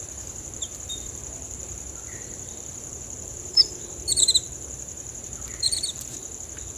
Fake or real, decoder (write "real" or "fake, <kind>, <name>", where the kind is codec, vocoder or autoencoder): fake, vocoder, BigVGAN v2